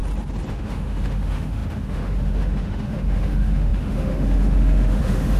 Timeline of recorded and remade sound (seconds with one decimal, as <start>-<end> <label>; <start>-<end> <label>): 0.0-0.5 recorded; 0.5-5.4 remade